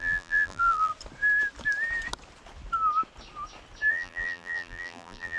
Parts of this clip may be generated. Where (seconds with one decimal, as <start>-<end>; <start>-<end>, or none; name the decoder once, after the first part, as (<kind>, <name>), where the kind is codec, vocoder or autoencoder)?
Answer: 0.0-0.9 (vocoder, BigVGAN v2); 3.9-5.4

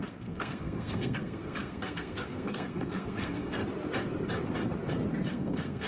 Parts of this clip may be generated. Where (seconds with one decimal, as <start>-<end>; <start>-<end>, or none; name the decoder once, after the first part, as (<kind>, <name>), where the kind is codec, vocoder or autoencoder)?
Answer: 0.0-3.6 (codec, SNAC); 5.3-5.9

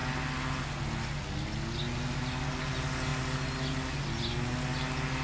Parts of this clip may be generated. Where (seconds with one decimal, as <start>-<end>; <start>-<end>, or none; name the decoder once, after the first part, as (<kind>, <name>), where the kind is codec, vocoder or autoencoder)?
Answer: none